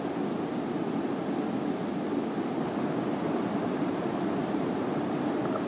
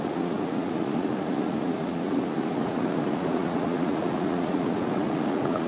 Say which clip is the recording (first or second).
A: first